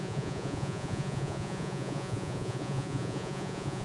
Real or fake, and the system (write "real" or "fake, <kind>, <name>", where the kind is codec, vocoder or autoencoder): fake, vocoder, Vocos